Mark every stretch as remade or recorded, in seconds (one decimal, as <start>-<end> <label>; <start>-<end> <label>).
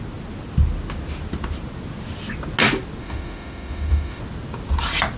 0.0-3.0 recorded; 3.0-4.2 remade; 4.2-5.2 recorded